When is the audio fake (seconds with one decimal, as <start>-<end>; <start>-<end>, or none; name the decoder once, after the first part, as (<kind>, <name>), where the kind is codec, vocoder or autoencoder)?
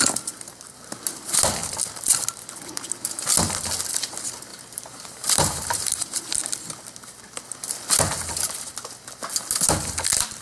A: 4.5-6.2 (vocoder, BigVGAN v2)